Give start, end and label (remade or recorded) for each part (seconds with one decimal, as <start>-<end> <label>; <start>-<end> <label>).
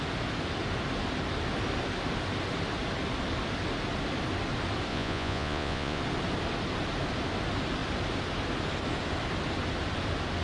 0.0-4.9 recorded; 4.9-6.0 remade; 6.0-10.4 recorded